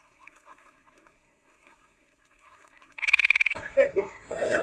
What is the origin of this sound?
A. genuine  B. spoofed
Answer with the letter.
B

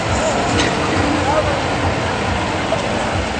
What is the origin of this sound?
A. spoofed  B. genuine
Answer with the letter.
B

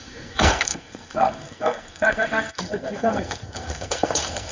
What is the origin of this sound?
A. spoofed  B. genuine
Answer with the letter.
A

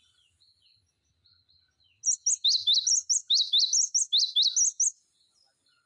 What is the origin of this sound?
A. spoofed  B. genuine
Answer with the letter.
B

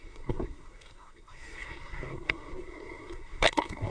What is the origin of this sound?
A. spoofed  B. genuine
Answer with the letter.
A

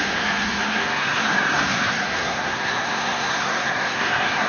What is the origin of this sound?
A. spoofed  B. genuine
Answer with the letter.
A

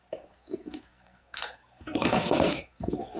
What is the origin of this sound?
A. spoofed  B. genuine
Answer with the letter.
A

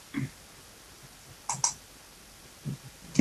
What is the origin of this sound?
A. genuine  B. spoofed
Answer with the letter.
A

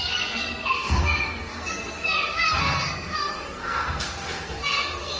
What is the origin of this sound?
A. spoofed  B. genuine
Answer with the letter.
A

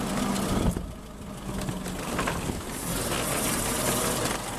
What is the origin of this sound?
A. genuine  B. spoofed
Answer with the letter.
A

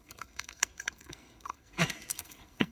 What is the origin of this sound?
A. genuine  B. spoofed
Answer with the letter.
B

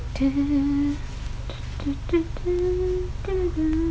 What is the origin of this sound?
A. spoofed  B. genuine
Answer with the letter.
B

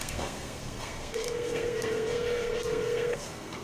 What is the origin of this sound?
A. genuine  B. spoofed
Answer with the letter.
B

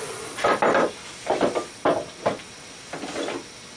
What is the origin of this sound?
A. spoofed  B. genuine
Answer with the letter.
B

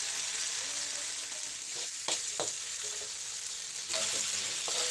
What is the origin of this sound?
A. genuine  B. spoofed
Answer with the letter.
A